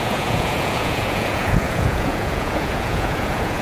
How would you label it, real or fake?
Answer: fake